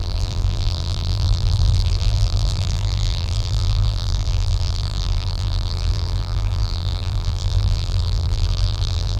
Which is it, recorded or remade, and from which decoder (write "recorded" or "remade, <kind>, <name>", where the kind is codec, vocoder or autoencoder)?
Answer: remade, vocoder, BigVGAN v2